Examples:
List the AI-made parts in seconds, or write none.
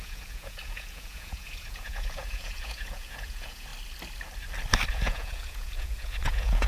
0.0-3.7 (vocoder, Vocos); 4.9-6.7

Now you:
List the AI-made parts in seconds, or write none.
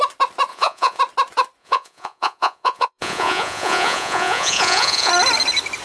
0.5-1.0 (vocoder, Vocos); 1.6-5.1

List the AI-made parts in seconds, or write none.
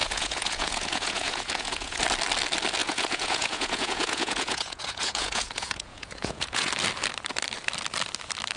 0.0-2.0 (vocoder, Vocos); 2.8-6.7